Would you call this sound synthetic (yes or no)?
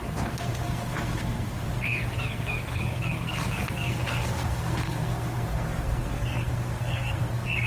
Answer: yes